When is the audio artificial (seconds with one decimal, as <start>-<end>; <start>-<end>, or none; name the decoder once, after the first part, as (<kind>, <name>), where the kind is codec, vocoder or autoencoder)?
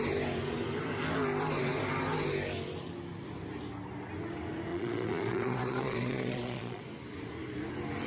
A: 4.7-6.8 (vocoder, Vocos)